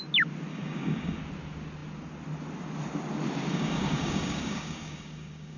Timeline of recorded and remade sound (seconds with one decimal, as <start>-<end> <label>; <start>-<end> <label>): 0.0-0.5 recorded; 0.5-1.2 remade; 1.2-3.5 recorded; 3.5-5.6 remade

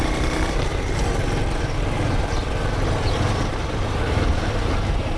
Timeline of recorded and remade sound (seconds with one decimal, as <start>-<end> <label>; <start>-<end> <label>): 0.0-0.7 remade; 0.7-2.7 recorded; 2.7-5.2 remade

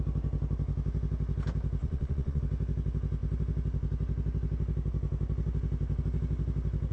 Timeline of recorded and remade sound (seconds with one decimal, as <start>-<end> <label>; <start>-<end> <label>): 0.0-1.8 recorded; 1.8-2.4 remade; 2.4-6.9 recorded